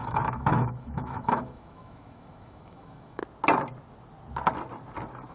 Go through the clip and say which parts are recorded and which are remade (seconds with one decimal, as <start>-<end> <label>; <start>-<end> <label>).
0.0-3.2 remade; 3.2-5.3 recorded

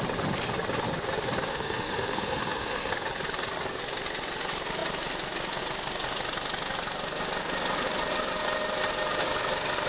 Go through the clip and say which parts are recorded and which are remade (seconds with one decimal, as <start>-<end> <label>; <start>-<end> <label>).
0.0-1.5 recorded; 1.5-2.9 remade; 2.9-9.9 recorded

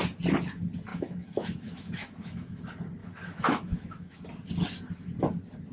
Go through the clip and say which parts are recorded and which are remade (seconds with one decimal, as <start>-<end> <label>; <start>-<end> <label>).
0.0-0.9 recorded; 0.9-2.6 remade; 2.6-3.0 recorded; 3.0-4.2 remade; 4.2-5.7 recorded

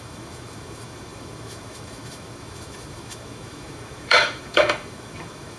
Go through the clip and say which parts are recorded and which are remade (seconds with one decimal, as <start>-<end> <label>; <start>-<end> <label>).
0.0-5.6 remade